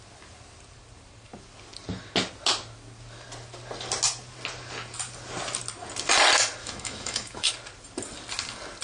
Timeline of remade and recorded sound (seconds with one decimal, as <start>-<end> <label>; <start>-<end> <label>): 0.0-6.6 recorded; 6.6-7.5 remade; 7.5-8.8 recorded